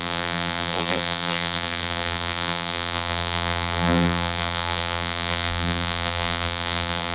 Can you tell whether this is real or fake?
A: fake